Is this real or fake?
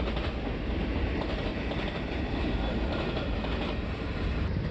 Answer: real